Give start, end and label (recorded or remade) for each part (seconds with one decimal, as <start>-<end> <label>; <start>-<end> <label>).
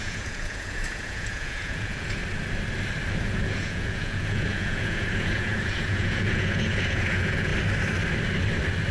0.0-2.2 remade; 2.2-3.2 recorded; 3.2-7.5 remade; 7.5-8.9 recorded